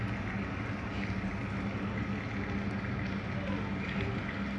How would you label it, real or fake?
real